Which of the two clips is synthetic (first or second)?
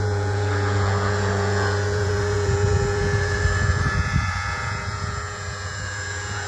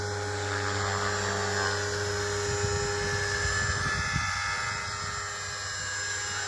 first